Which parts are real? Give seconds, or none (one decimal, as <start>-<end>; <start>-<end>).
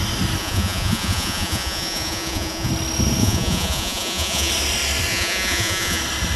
0.0-0.4; 2.7-3.2; 4.5-5.1; 6.0-6.4